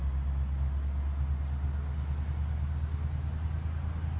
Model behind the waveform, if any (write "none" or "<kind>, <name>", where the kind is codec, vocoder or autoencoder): none